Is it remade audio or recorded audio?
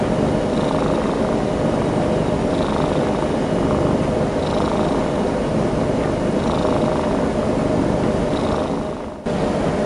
recorded